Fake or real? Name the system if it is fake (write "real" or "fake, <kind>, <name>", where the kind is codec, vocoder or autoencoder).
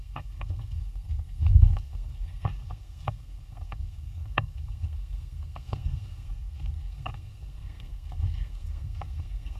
fake, codec, SNAC